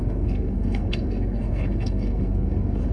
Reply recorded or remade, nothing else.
remade